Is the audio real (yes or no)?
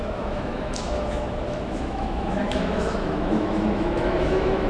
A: no